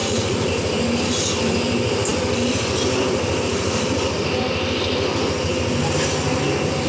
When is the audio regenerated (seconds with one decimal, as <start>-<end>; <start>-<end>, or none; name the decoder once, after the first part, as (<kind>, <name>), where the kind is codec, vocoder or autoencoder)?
0.0-0.5 (vocoder, Vocos)

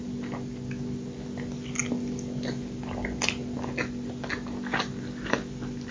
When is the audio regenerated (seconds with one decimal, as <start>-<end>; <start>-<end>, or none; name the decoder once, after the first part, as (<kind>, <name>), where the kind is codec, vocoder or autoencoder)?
none

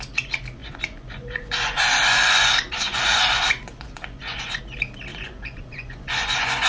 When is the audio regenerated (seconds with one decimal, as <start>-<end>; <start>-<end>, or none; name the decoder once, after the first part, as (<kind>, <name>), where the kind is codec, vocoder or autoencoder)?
0.6-4.6 (vocoder, Vocos); 5.1-6.7

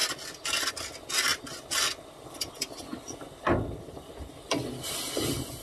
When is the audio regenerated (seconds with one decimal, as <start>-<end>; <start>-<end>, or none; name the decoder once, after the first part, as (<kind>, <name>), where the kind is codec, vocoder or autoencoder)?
none

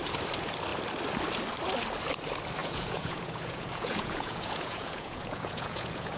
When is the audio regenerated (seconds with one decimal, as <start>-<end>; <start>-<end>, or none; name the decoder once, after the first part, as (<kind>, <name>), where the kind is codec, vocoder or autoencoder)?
2.6-6.2 (vocoder, Vocos)